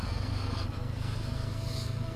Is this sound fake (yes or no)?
yes